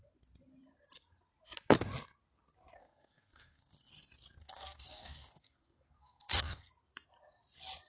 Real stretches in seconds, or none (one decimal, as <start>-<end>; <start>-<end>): 0.0-2.8; 3.9-4.4; 6.7-7.9